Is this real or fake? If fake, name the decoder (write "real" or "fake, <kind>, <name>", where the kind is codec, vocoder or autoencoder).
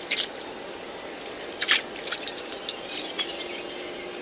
real